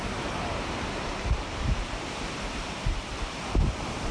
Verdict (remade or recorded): remade